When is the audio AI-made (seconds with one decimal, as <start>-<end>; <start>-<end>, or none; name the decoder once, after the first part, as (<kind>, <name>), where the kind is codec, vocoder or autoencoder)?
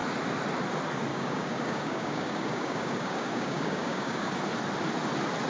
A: 1.1-4.4 (codec, DAC)